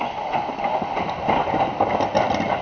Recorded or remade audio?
recorded